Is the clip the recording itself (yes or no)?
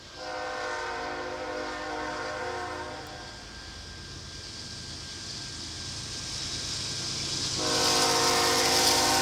yes